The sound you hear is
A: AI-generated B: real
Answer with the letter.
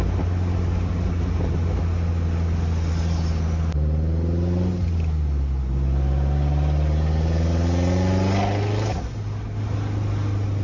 B